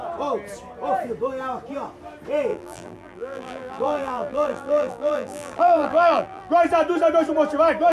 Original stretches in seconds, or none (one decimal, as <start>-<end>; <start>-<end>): 0.0-2.5; 6.5-7.9